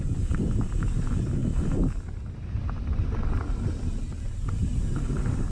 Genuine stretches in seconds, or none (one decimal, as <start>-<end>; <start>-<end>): 0.0-5.5